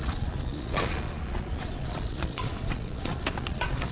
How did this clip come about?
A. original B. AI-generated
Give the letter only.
B